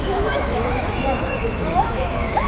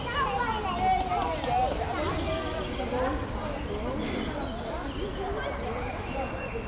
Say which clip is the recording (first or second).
second